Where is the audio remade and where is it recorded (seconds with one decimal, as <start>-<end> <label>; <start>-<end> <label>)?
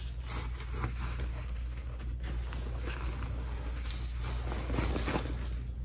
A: 0.0-1.3 recorded; 1.3-2.0 remade; 2.0-3.3 recorded; 3.3-3.9 remade; 3.9-5.8 recorded